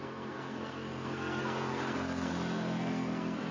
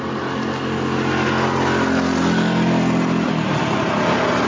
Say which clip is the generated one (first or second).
first